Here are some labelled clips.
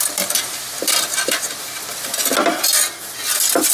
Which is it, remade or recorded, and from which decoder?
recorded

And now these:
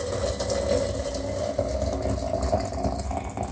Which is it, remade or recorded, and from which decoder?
recorded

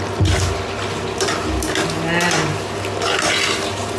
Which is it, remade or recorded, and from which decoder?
recorded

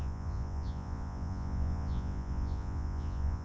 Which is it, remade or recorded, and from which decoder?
remade, vocoder, Vocos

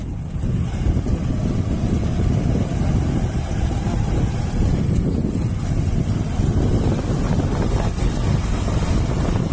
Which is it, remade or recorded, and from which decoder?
recorded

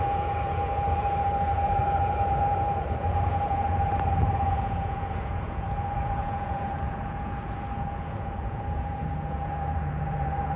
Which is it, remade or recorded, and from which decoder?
remade, vocoder, Vocos